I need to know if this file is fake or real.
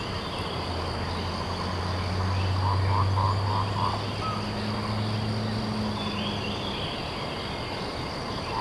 real